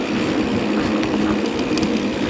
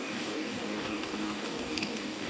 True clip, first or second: first